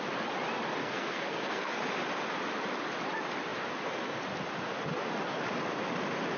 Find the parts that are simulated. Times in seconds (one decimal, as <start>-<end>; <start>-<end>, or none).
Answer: 0.8-1.7